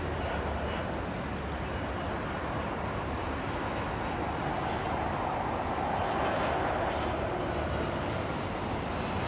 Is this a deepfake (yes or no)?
no